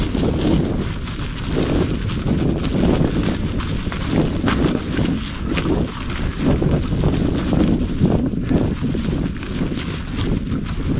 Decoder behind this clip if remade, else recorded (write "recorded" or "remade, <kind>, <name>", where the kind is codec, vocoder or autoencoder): recorded